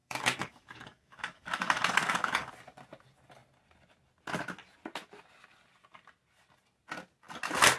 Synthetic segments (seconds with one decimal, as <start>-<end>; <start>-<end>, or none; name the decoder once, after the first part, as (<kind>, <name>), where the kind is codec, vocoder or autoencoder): 0.0-2.5 (codec, DAC)